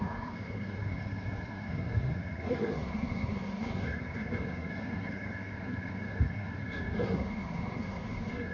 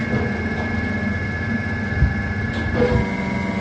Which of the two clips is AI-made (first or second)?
first